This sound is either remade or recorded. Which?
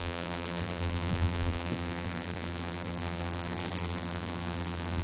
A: remade